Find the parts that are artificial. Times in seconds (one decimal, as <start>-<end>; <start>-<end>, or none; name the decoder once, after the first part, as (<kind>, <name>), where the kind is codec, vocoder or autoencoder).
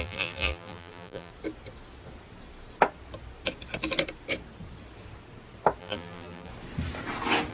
0.0-1.3 (vocoder, BigVGAN v2); 5.8-6.5